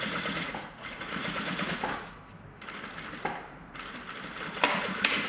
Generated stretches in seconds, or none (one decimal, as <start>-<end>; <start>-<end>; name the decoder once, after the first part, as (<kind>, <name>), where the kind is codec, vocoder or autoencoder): 0.0-2.2 (vocoder, Vocos); 4.7-5.3